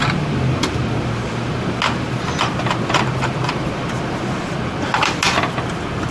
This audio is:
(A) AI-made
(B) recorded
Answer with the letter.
B